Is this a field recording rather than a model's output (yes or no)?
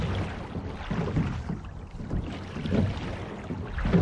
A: yes